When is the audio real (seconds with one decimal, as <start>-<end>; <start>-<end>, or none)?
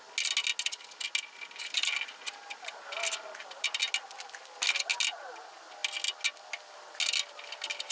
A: 0.0-7.9